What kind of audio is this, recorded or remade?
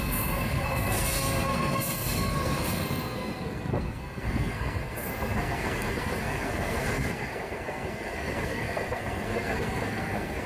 remade